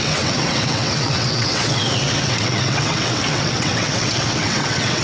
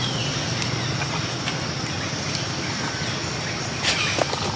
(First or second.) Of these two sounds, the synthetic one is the first